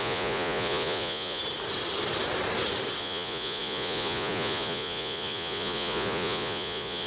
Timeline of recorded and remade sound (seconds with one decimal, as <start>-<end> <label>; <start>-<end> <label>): 0.0-1.4 remade; 1.4-3.0 recorded; 3.0-7.1 remade